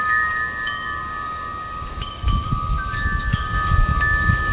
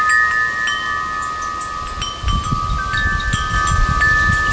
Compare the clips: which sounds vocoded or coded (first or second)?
first